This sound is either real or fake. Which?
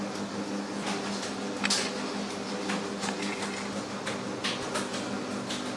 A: real